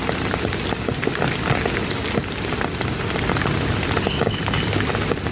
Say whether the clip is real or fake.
real